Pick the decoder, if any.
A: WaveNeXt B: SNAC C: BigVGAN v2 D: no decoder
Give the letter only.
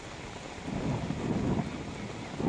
D